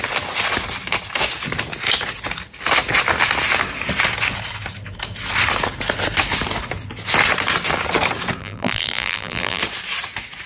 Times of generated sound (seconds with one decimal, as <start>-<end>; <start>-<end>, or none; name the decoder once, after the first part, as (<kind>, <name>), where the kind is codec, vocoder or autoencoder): 8.4-9.6 (vocoder, BigVGAN v2)